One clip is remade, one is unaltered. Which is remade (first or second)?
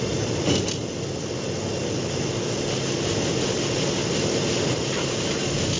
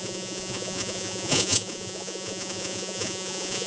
second